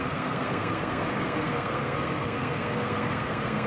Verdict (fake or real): fake